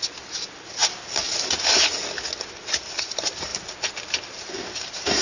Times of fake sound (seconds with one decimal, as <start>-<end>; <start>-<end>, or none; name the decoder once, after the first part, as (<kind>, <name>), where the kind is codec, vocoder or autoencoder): none